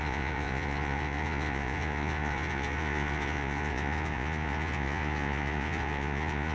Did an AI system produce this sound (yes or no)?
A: yes